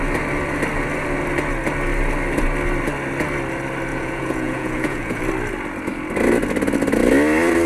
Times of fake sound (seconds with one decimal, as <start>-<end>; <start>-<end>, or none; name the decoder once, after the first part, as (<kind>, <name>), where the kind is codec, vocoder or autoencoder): 3.9-5.2 (vocoder, Vocos)